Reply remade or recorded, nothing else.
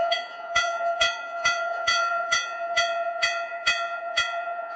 remade